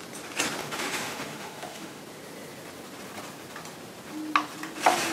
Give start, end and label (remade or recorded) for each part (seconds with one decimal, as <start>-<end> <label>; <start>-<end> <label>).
0.0-0.6 recorded; 0.6-2.0 remade; 2.0-5.1 recorded